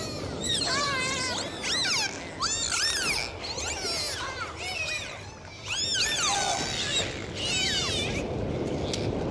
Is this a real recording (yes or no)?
yes